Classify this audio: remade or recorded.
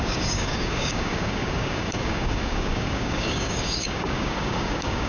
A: remade